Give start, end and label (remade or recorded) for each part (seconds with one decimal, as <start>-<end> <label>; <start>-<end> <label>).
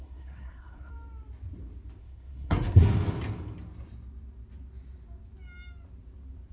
0.0-0.9 remade; 0.9-2.0 recorded; 2.0-2.9 remade; 2.9-6.5 recorded